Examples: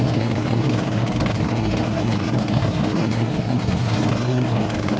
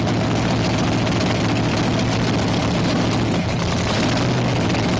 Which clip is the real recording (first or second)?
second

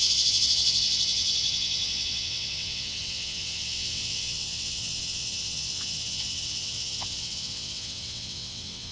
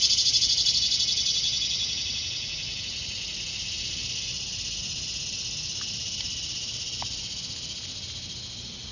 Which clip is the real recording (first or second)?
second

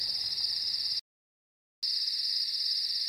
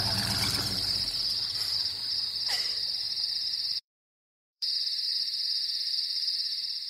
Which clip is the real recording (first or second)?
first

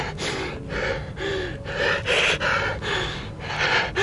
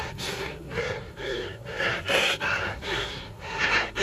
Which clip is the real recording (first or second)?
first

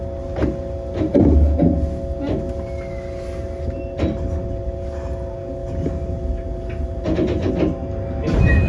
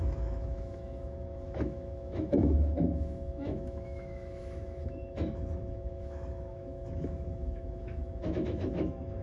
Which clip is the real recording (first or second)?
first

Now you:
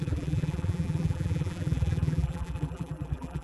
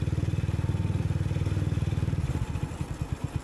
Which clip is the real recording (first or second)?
second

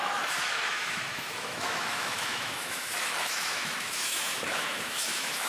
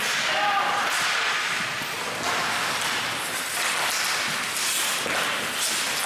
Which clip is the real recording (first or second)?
second